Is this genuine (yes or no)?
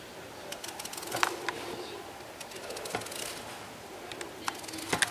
yes